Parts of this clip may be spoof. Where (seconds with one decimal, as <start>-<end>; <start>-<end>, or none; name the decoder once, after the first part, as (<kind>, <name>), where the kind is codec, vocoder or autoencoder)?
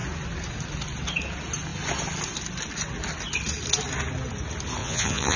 4.8-5.4 (vocoder, Vocos)